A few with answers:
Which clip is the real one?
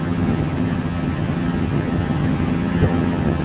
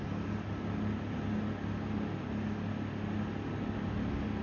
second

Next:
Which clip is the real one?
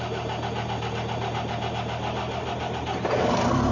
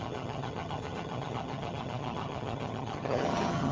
first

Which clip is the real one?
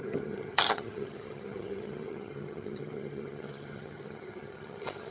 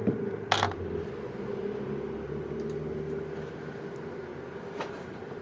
second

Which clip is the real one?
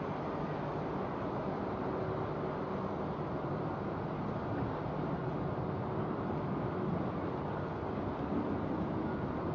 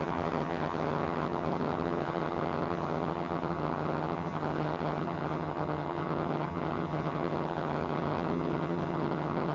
first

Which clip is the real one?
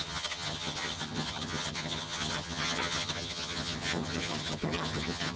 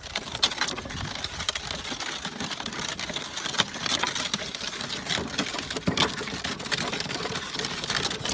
second